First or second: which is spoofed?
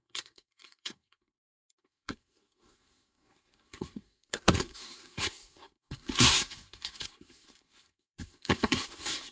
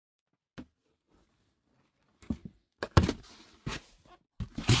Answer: first